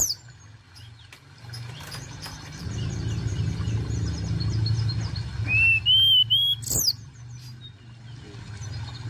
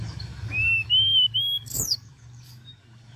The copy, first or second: second